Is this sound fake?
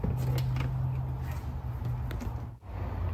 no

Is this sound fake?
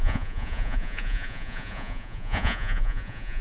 yes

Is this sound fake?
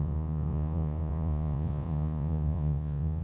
yes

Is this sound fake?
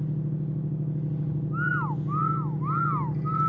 no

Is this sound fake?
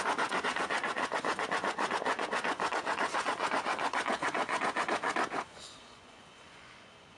yes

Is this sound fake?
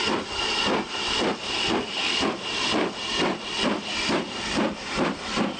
no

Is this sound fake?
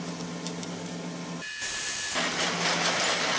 no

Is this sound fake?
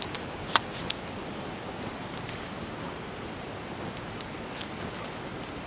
no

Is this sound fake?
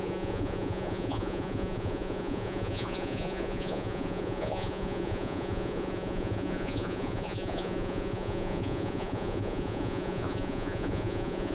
yes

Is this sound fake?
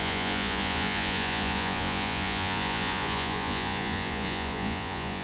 yes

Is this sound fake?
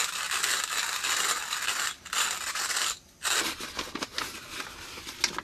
no